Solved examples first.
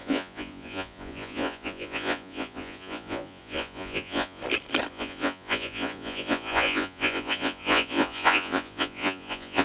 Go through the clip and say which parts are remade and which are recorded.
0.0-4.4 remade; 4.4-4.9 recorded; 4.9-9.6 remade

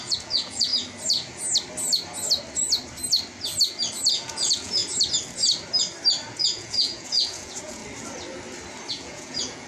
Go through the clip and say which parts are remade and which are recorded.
0.0-0.7 remade; 0.7-4.1 recorded; 4.1-4.8 remade; 4.8-6.3 recorded; 6.3-7.8 remade; 7.8-8.9 recorded; 8.9-9.7 remade

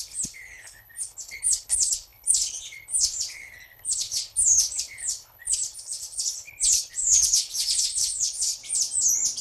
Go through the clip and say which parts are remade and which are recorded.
0.0-8.6 remade; 8.6-9.4 recorded

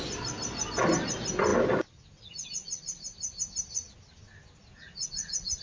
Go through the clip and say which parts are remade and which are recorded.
0.0-5.6 recorded